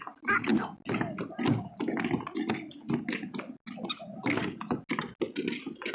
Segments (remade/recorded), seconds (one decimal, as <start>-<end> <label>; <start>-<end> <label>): 0.0-5.9 recorded